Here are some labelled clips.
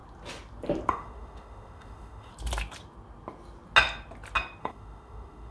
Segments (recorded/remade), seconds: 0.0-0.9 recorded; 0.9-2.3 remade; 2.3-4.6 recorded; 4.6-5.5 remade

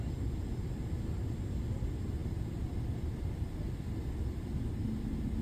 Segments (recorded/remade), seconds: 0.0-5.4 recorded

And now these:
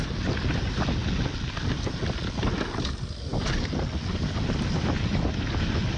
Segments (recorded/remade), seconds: 0.0-6.0 recorded

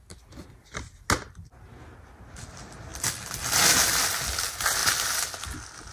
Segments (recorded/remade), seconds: 0.0-5.9 recorded